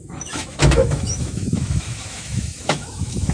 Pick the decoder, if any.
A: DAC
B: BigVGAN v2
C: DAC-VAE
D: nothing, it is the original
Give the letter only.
C